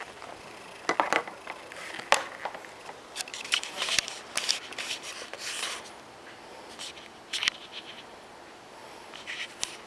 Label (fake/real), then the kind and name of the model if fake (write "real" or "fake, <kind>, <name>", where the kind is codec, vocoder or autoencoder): real